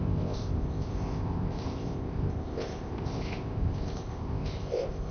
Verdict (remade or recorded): remade